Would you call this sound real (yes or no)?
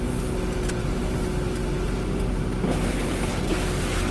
yes